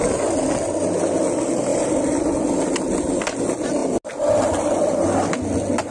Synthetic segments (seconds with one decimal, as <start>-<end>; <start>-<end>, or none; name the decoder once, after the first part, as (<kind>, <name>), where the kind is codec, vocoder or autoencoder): none